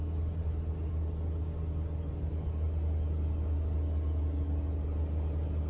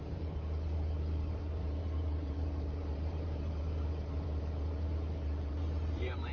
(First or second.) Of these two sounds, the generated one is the second